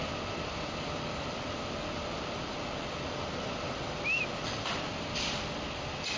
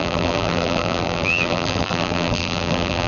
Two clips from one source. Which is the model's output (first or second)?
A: second